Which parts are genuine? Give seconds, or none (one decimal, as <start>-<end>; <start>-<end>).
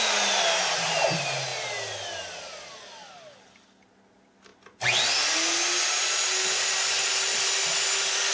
0.0-8.3